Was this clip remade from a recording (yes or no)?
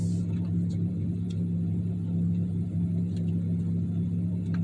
no